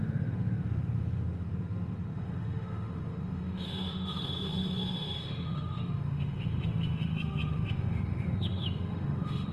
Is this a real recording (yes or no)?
no